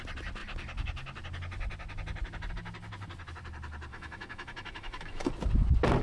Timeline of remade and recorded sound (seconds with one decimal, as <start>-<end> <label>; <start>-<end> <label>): 0.0-3.9 recorded; 3.9-5.3 remade; 5.3-6.0 recorded